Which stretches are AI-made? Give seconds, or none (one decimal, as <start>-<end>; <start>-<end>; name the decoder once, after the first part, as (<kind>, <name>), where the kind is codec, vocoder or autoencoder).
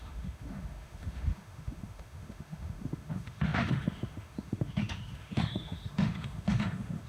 0.0-7.1 (autoencoder, DAC-VAE)